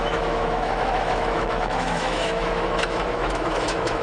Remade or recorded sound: remade